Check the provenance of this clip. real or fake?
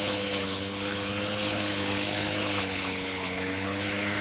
fake